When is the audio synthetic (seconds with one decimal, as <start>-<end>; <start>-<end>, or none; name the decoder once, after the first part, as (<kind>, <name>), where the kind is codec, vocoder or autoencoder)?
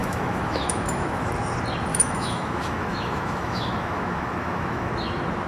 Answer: 0.0-1.3 (autoencoder, DAC-VAE); 1.9-4.9